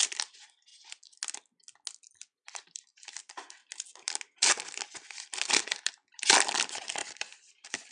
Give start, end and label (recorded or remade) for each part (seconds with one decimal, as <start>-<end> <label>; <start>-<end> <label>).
0.0-0.7 remade; 0.7-2.1 recorded; 2.1-3.6 remade; 3.6-5.9 recorded; 5.9-7.9 remade